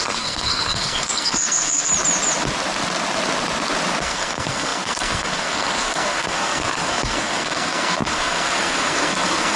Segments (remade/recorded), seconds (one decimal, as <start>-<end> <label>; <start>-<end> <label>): 0.0-1.9 remade; 1.9-4.0 recorded; 4.0-9.6 remade